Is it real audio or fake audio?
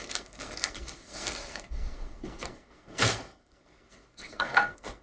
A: fake